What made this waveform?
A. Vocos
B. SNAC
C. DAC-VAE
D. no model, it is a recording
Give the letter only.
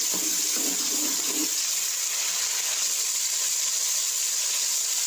D